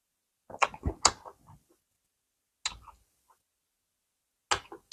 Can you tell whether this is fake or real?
real